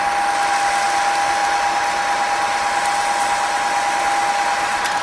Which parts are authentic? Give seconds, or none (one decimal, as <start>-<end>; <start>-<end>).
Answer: 0.0-5.0